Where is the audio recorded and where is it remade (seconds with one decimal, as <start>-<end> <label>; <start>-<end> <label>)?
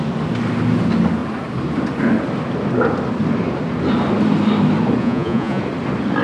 0.0-5.0 recorded; 5.0-5.6 remade; 5.6-6.2 recorded